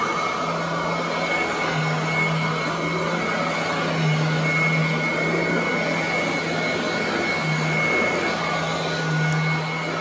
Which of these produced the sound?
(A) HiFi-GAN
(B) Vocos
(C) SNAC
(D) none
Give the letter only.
D